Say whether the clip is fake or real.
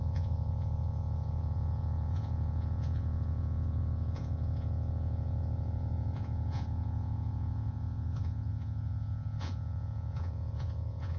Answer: fake